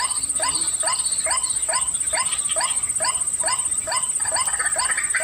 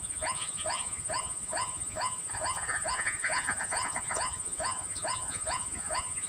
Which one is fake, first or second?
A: second